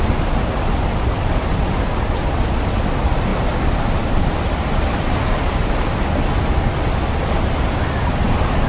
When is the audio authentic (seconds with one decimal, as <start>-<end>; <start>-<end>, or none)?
0.0-8.7